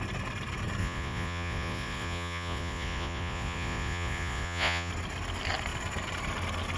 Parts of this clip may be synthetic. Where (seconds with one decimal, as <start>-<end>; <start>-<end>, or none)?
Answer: 0.8-4.9